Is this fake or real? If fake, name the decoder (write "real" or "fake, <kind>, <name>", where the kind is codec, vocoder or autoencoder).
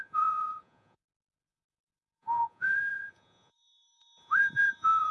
fake, vocoder, Vocos